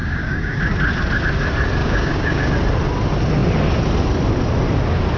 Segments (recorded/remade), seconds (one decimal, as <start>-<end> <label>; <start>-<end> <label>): 0.0-0.6 remade; 0.6-1.8 recorded; 1.8-2.5 remade; 2.5-5.2 recorded